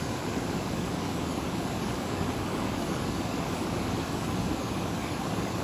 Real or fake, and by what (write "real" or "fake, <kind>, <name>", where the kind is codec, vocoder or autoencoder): fake, codec, DAC